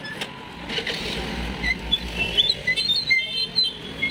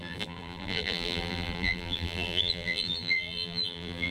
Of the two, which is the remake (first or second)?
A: second